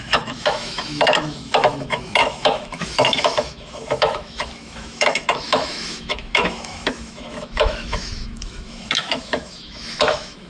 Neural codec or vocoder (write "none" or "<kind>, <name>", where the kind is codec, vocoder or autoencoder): autoencoder, DAC-VAE